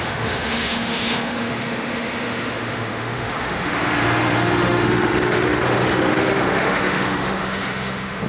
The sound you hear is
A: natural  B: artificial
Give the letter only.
B